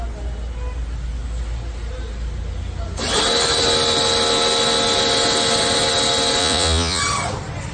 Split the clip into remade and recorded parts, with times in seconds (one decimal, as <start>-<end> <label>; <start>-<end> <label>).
0.0-6.4 recorded; 6.4-7.0 remade; 7.0-7.7 recorded